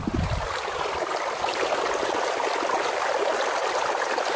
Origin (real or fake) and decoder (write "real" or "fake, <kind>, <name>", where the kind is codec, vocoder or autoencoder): real